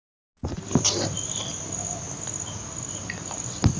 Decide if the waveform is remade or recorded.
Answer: recorded